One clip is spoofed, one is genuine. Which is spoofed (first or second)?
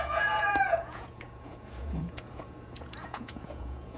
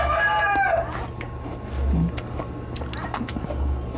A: first